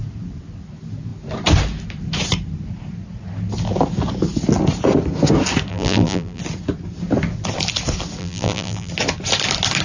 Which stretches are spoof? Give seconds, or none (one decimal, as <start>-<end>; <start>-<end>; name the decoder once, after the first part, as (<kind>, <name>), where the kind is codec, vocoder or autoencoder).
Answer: 5.7-6.4 (vocoder, BigVGAN v2); 8.2-8.9